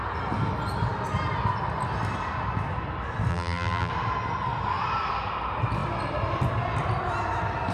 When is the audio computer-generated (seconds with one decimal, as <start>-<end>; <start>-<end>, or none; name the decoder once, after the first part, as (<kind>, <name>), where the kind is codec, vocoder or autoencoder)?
3.3-3.9 (vocoder, BigVGAN v2)